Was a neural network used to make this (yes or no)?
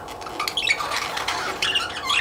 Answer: no